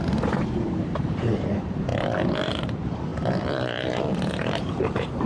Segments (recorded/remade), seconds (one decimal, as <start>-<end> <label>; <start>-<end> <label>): 0.0-5.3 remade